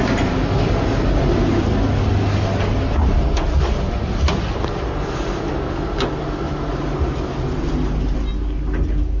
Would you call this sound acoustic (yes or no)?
yes